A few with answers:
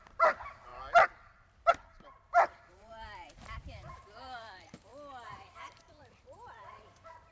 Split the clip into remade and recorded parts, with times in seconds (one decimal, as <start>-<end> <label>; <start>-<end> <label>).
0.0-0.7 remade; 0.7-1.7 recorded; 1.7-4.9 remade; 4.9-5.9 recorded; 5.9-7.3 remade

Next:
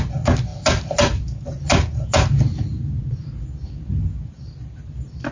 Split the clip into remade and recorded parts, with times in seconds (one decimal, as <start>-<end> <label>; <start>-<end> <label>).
0.0-0.5 recorded; 0.5-1.5 remade; 1.5-5.3 recorded

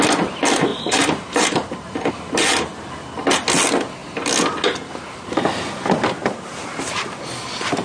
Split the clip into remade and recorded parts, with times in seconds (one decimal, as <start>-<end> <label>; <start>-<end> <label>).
0.0-0.7 recorded; 0.7-2.1 remade; 2.1-7.8 recorded

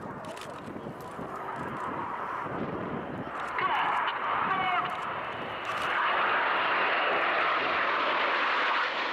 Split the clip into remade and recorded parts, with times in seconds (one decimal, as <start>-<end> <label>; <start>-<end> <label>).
0.0-1.7 recorded; 1.7-3.3 remade; 3.3-4.1 recorded; 4.1-5.0 remade; 5.0-9.1 recorded

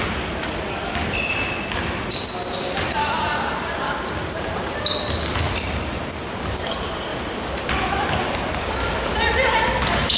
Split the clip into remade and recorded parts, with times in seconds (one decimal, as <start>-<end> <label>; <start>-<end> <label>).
0.0-5.3 recorded; 5.3-6.0 remade; 6.0-7.1 recorded; 7.1-7.7 remade; 7.7-10.2 recorded